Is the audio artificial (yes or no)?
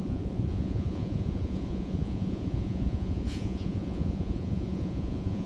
yes